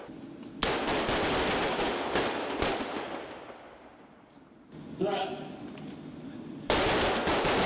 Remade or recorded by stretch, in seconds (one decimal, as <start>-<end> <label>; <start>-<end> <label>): 0.0-7.7 recorded